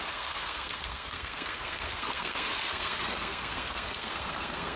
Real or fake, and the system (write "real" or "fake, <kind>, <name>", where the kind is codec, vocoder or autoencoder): fake, codec, SNAC